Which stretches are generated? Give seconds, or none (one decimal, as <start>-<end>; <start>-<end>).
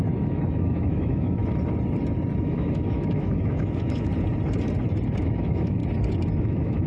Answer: 0.0-1.4; 2.4-4.1; 5.2-5.8; 6.4-6.9